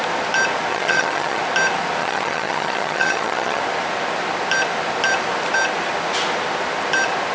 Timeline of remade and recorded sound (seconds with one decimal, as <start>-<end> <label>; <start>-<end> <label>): 0.0-0.7 recorded; 0.7-1.4 remade; 1.4-2.0 recorded; 2.0-3.6 remade; 3.6-7.3 recorded